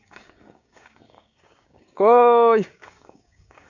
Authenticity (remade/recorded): remade